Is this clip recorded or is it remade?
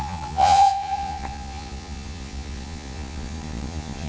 remade